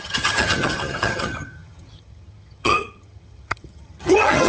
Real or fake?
fake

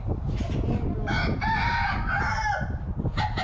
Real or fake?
real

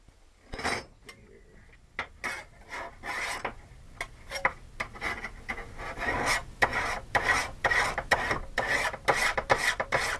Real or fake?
real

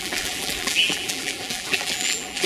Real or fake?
fake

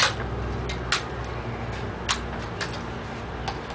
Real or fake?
real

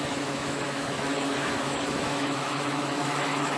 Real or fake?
fake